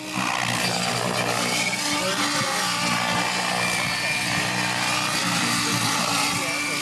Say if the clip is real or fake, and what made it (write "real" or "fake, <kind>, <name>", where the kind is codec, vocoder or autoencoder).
real